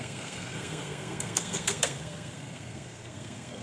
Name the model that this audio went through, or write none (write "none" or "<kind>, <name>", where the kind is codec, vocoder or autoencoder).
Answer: codec, SNAC